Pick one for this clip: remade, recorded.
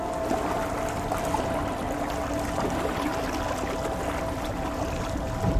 recorded